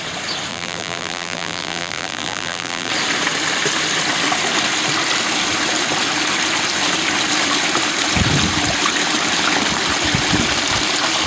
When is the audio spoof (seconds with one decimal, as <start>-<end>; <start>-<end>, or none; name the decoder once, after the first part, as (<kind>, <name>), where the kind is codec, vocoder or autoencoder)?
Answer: 0.5-2.9 (vocoder, BigVGAN v2)